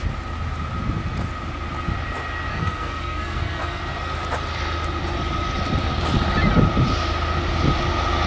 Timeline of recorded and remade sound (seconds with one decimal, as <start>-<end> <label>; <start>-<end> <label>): 0.0-2.5 recorded; 2.5-3.8 remade; 3.8-8.3 recorded